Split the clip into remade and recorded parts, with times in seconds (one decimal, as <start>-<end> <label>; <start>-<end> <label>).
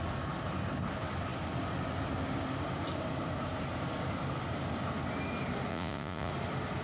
0.0-5.7 recorded; 5.7-6.3 remade; 6.3-6.8 recorded